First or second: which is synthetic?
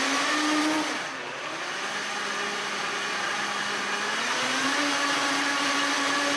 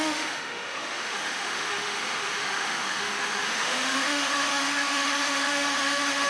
second